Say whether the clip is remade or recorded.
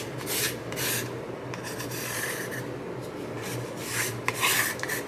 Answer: recorded